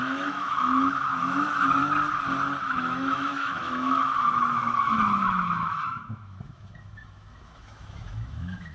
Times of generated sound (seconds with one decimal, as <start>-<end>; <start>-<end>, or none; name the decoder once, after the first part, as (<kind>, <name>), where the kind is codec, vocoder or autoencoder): 0.0-1.8 (autoencoder, DAC-VAE); 2.7-8.7

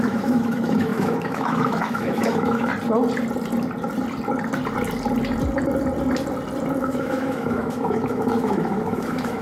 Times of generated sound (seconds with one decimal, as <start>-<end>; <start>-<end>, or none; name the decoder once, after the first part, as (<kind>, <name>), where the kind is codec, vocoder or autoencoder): 0.0-2.7 (autoencoder, DAC-VAE); 6.8-9.4